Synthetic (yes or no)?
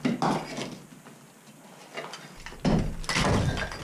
no